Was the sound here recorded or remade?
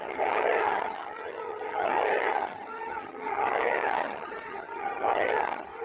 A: remade